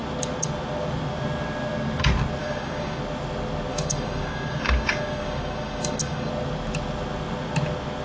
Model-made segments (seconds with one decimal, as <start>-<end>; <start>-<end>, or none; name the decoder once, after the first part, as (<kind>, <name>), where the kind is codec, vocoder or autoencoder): 2.4-3.0 (codec, DAC); 3.7-6.3